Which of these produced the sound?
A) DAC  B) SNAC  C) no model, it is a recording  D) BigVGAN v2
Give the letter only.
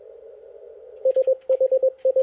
C